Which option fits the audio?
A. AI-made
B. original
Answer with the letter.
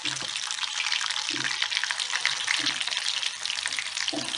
B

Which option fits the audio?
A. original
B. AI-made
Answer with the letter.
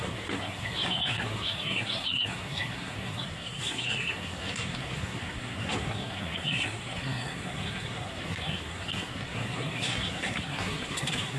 B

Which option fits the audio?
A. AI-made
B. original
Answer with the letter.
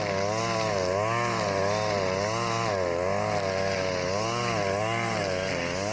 B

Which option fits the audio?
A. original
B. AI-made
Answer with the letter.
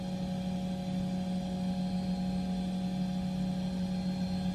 A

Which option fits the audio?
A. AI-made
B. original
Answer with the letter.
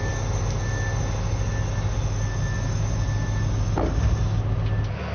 B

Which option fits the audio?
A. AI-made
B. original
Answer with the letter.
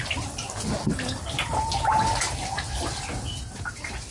B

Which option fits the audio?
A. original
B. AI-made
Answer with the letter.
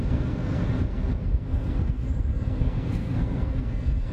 B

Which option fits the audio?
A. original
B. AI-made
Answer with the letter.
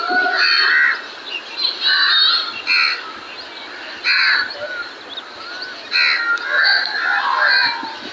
A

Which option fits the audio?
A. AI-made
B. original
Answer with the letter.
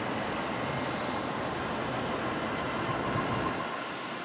B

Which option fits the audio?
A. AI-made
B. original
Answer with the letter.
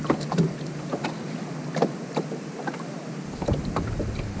B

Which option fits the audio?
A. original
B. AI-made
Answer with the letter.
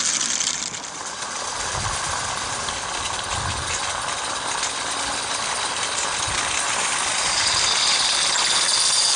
A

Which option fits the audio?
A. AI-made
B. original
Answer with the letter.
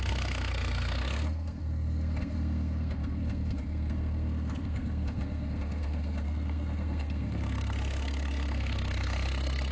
A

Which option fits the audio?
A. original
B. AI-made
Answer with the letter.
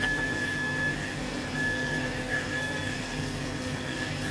B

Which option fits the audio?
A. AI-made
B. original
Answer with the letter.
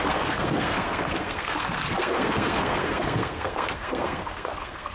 A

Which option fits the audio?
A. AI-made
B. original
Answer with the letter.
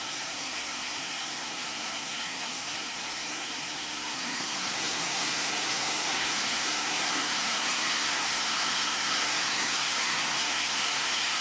A